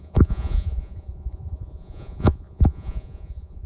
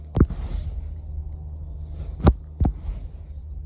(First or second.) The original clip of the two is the second